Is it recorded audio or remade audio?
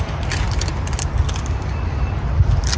recorded